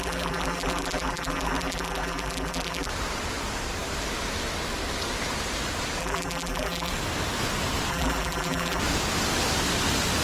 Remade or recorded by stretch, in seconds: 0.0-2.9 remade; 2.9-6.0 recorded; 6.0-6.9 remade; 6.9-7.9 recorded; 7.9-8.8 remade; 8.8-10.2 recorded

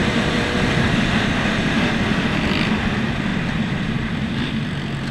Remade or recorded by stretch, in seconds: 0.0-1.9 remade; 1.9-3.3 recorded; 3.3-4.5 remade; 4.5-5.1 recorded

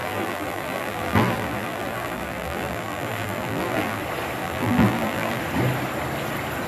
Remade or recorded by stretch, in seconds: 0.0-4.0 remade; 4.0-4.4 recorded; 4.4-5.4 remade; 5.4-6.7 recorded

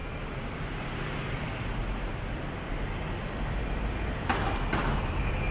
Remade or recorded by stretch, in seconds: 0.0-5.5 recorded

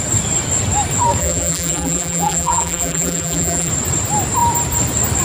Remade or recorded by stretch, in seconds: 0.0-1.2 recorded; 1.2-3.7 remade; 3.7-5.2 recorded

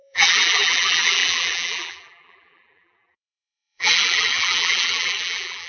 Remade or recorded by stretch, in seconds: 0.0-5.7 remade